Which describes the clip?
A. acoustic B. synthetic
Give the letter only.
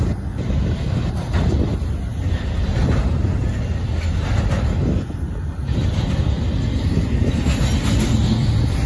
A